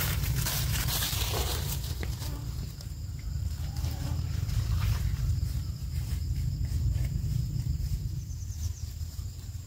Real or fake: fake